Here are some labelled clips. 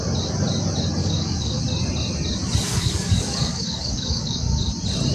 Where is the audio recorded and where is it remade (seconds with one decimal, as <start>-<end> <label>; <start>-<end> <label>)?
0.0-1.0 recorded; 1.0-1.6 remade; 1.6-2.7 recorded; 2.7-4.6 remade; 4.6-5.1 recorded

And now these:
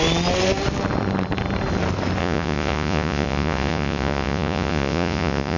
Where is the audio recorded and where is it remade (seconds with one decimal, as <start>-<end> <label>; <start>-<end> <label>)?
0.0-2.2 recorded; 2.2-5.6 remade

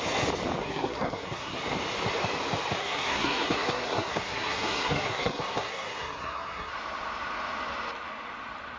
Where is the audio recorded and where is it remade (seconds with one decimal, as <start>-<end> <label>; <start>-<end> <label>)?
0.0-0.6 recorded; 0.6-1.6 remade; 1.6-2.8 recorded; 2.8-6.7 remade; 6.7-8.8 recorded